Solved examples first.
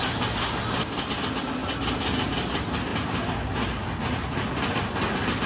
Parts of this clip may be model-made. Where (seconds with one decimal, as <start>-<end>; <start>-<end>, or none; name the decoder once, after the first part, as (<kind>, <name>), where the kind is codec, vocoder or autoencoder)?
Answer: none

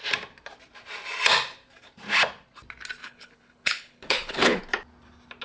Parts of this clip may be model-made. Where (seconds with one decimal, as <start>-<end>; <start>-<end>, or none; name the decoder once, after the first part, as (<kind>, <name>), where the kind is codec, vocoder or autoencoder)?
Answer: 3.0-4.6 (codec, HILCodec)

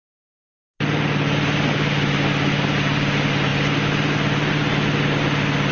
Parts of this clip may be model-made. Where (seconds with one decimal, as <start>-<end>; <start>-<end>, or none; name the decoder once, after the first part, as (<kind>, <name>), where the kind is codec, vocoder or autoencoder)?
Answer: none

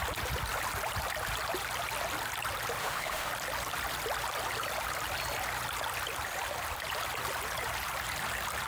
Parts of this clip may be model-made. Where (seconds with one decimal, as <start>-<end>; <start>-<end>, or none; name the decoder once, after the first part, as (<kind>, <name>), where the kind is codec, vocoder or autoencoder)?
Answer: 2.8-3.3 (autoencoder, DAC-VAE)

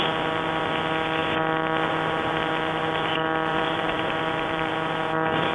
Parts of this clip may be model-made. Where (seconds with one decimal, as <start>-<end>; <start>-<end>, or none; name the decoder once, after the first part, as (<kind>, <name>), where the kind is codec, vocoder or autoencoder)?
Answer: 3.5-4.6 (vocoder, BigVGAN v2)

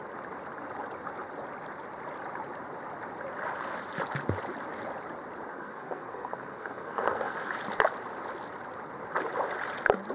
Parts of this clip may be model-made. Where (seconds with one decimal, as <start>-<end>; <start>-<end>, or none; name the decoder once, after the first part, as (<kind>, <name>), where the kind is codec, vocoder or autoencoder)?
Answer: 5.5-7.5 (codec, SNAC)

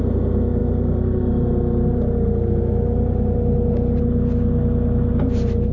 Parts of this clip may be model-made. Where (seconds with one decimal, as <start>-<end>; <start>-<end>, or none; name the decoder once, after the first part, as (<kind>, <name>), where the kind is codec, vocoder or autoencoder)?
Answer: none